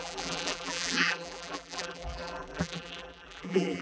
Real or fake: fake